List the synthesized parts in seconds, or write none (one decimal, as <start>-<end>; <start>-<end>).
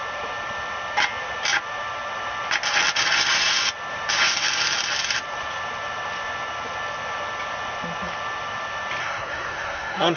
9.0-10.2